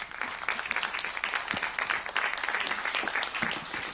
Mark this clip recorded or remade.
recorded